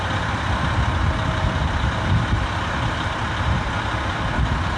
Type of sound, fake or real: real